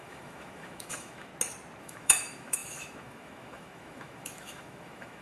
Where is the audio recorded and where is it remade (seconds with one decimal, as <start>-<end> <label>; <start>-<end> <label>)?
0.0-1.3 remade; 1.3-1.8 recorded; 1.8-5.2 remade